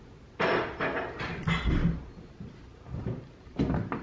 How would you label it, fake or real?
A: real